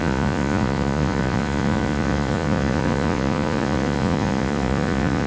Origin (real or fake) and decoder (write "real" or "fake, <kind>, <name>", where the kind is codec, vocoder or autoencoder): fake, vocoder, Vocos